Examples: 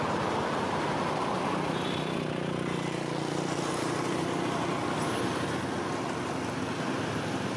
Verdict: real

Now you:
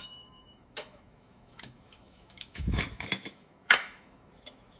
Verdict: fake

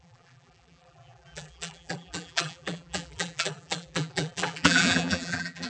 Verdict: fake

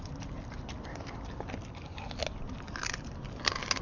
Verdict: real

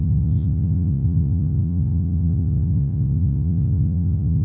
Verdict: fake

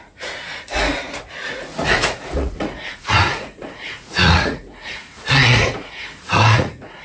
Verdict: fake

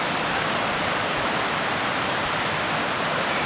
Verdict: real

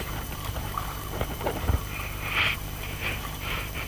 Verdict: fake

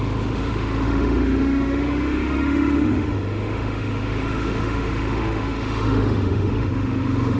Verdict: fake